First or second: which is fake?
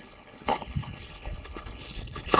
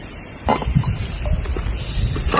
first